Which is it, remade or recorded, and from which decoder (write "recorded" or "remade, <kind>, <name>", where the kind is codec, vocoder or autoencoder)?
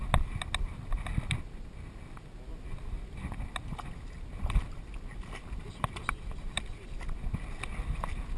recorded